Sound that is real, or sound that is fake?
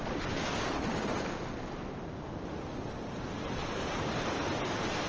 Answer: real